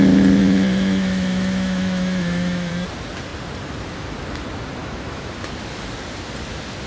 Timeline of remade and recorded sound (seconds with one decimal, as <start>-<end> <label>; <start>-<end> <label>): 0.0-0.4 recorded; 0.4-2.7 remade; 2.7-4.8 recorded; 4.8-5.3 remade; 5.3-6.9 recorded